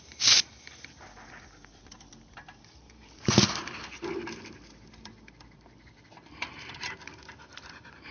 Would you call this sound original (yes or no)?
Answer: no